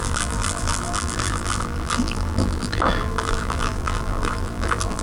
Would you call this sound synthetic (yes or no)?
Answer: yes